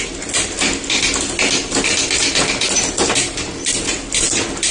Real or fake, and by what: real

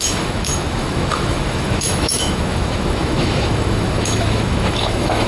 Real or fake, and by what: fake, autoencoder, DAC-VAE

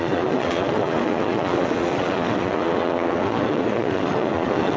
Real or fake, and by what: fake, vocoder, Vocos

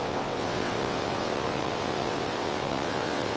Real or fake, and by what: fake, vocoder, WaveNeXt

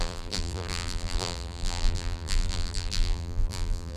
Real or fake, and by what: fake, vocoder, BigVGAN v2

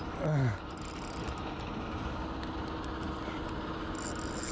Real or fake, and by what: real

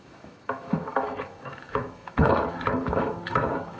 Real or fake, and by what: fake, autoencoder, DAC-VAE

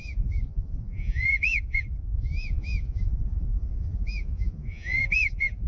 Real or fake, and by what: fake, vocoder, Vocos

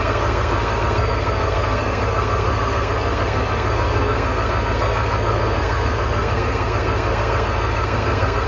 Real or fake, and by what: fake, codec, SNAC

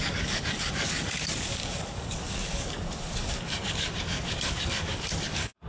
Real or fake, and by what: fake, codec, DAC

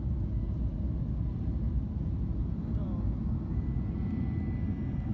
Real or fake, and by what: real